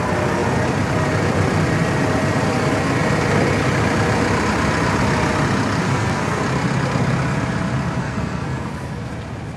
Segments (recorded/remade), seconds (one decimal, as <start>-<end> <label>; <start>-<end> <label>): 0.0-5.8 recorded; 5.8-6.4 remade; 6.4-8.0 recorded; 8.0-9.1 remade; 9.1-9.6 recorded